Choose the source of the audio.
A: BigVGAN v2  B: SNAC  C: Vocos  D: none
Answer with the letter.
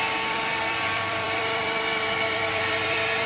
A